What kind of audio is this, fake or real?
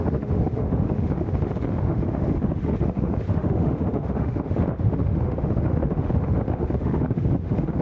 fake